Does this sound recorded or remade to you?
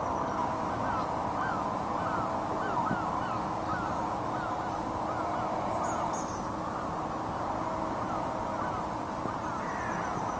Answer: recorded